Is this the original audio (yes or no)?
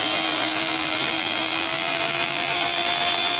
no